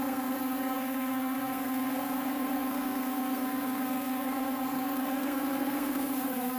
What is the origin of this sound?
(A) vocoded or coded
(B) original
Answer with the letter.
A